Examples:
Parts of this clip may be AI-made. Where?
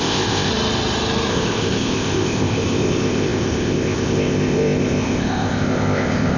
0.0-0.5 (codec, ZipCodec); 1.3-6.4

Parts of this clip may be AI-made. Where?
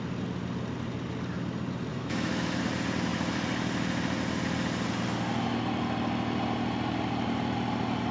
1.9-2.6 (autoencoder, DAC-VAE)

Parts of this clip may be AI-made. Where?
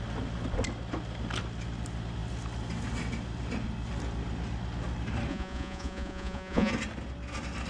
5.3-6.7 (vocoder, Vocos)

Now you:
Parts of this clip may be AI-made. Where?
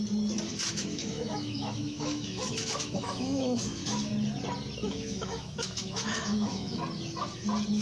0.5-4.1 (autoencoder, DAC-VAE); 4.8-6.8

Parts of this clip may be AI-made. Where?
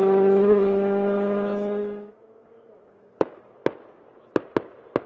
0.0-3.6 (autoencoder, DAC-VAE)